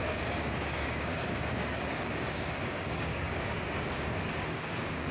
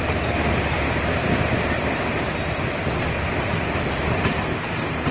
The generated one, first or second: first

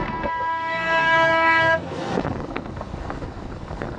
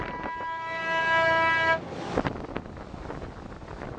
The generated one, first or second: first